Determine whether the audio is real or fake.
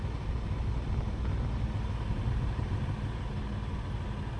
real